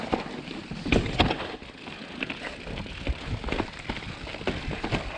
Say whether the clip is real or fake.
real